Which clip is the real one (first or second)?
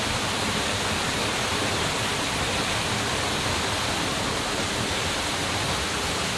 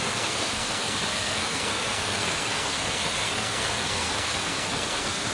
first